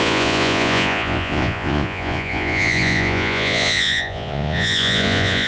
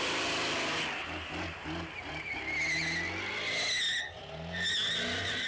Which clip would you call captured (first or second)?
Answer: second